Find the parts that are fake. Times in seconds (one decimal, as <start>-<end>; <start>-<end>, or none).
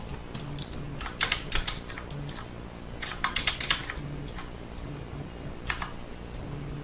none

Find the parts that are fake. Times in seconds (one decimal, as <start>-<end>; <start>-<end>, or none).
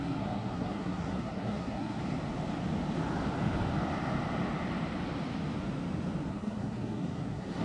0.0-2.0; 6.3-7.6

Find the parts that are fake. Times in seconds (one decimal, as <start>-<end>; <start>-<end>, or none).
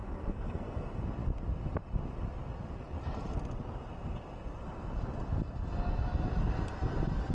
0.0-1.0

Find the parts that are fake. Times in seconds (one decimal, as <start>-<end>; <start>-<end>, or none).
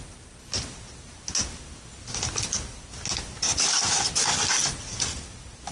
none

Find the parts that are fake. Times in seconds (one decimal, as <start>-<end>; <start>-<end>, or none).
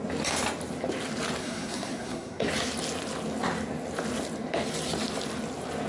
1.4-2.5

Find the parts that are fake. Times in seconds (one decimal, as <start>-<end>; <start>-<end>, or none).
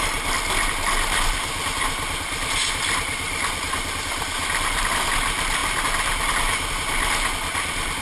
none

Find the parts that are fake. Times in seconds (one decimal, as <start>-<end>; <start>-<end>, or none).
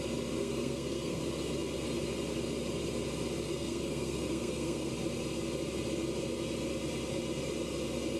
0.4-1.2; 3.5-4.9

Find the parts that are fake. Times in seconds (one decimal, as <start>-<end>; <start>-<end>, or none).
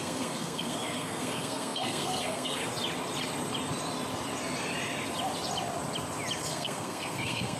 0.0-2.6; 6.4-7.6